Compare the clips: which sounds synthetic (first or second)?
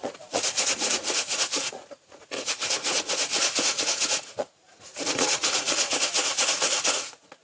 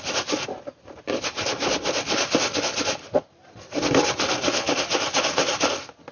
first